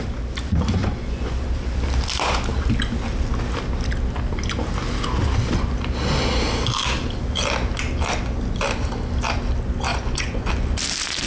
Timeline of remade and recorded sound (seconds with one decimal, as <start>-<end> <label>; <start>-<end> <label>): 0.0-0.8 recorded; 0.8-1.4 remade; 1.4-9.9 recorded; 9.9-10.5 remade; 10.5-11.3 recorded